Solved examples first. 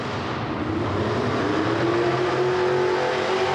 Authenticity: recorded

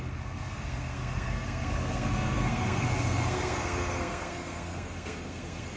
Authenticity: remade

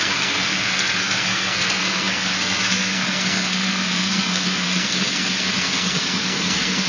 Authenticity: remade